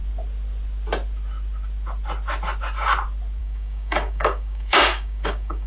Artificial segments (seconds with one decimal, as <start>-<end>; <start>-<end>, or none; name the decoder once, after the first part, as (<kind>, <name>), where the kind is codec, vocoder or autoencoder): 3.4-5.7 (codec, DAC)